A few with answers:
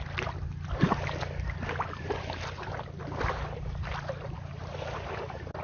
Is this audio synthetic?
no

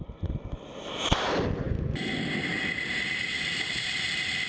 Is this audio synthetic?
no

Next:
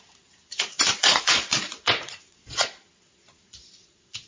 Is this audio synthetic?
yes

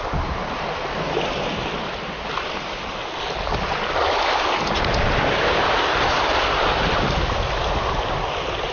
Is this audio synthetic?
no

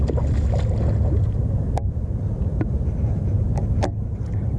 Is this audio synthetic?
no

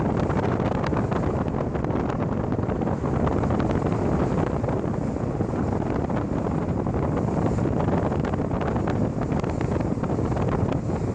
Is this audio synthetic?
no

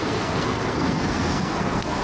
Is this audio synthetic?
yes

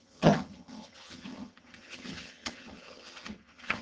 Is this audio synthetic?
yes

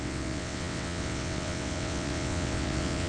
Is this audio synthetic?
yes